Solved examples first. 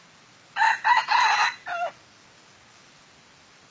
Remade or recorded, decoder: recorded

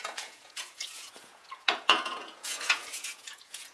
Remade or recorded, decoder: remade, vocoder, Vocos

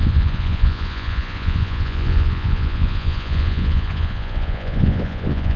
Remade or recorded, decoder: remade, vocoder, Vocos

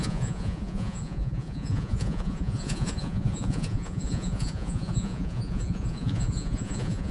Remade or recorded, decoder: remade, vocoder, Vocos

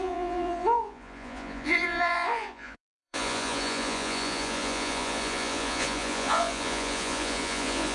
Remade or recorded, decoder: remade, vocoder, Vocos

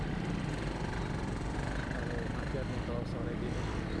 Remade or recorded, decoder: recorded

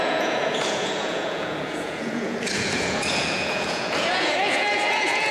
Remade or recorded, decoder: remade, vocoder, Vocos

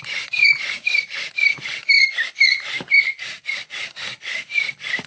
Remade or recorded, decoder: recorded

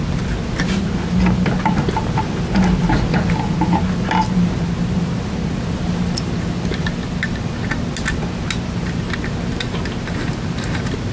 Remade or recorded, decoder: recorded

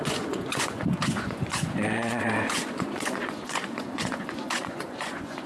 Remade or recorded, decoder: remade, vocoder, Vocos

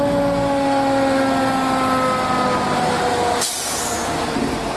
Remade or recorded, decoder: recorded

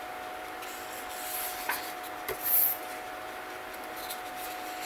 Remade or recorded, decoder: recorded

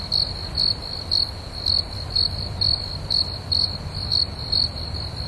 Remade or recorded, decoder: recorded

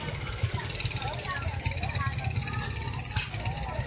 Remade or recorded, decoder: recorded